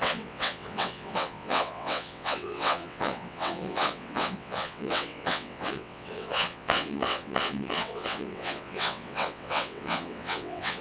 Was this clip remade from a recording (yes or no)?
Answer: yes